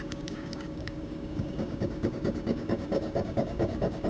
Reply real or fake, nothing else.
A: fake